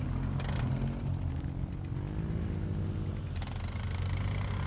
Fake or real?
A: real